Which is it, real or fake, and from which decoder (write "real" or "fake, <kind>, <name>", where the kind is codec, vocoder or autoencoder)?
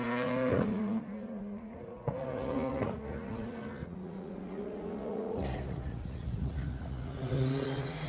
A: fake, vocoder, Vocos